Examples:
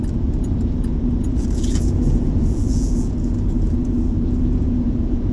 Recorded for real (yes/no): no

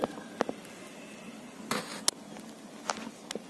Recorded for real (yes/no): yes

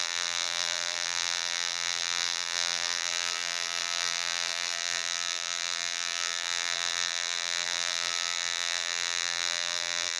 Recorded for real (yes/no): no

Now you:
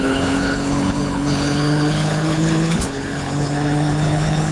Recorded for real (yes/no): no